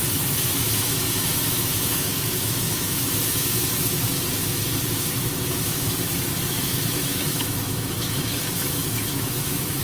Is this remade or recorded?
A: remade